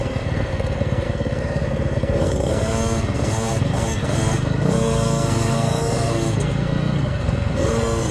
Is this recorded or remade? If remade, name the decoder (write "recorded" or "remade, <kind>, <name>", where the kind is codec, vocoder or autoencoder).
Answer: remade, codec, SNAC